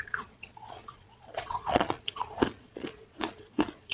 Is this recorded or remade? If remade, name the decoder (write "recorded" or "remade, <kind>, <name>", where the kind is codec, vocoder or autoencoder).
remade, vocoder, Vocos